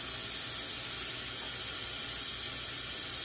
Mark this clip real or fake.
real